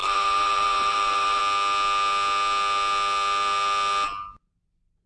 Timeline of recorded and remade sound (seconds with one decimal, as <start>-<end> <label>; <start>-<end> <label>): 0.0-1.4 remade; 1.4-5.1 recorded